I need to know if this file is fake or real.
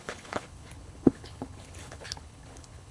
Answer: fake